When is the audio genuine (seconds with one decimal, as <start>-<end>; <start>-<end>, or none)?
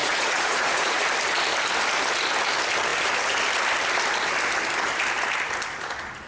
1.0-6.3